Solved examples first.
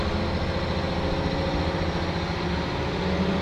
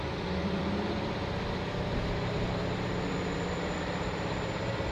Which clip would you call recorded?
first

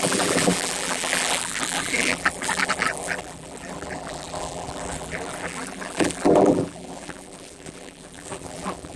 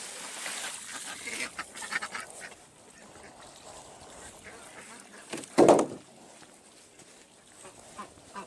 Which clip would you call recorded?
second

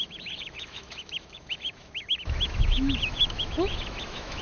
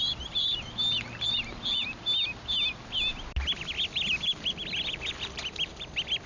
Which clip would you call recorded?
second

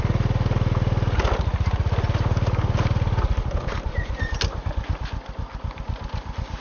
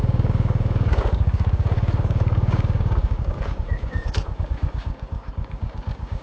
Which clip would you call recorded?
first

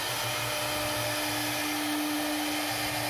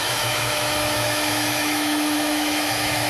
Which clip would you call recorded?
first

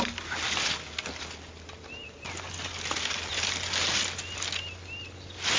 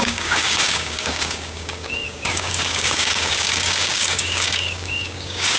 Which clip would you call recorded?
first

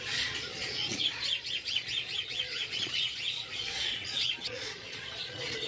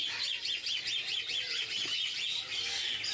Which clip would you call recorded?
second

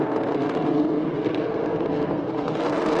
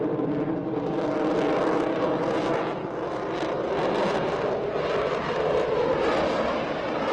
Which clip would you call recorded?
second